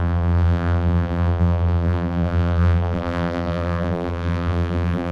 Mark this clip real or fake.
fake